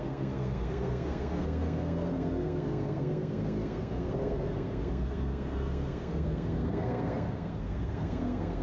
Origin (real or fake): fake